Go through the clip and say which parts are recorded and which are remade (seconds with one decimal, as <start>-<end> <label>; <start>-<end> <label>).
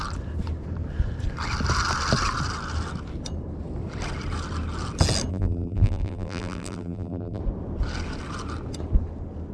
0.0-5.3 recorded; 5.3-7.4 remade; 7.4-9.5 recorded